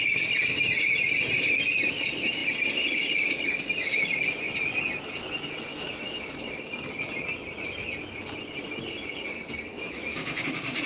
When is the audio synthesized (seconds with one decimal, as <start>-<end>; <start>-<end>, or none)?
5.7-6.3; 9.7-10.3